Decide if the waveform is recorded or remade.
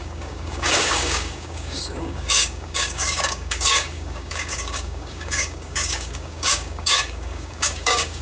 remade